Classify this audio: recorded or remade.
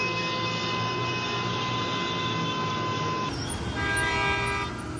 recorded